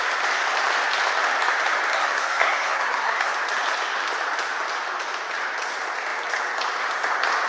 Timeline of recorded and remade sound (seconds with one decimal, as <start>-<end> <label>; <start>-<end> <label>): 0.0-1.9 recorded; 1.9-3.3 remade; 3.3-7.5 recorded